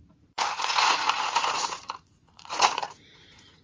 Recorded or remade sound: remade